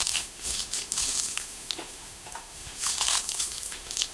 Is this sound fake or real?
fake